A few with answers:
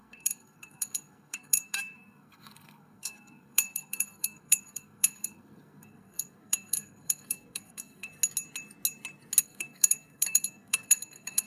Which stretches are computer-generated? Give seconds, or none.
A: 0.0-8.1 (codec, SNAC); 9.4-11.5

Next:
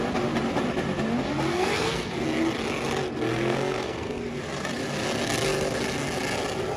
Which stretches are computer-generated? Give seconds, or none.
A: 1.5-2.1 (codec, SNAC); 3.3-4.2

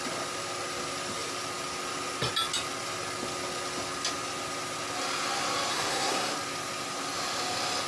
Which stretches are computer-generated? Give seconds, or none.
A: 5.7-6.3 (codec, SNAC)

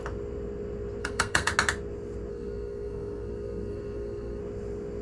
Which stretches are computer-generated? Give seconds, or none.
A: 1.0-1.5 (codec, SNAC); 2.3-4.4

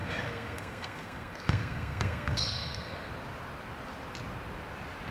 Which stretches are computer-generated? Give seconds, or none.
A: 0.0-3.1 (codec, SNAC)

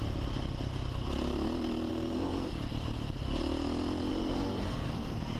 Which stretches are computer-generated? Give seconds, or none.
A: 1.9-2.5 (codec, SNAC); 4.1-5.4

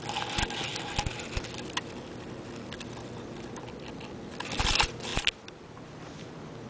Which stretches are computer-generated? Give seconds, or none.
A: none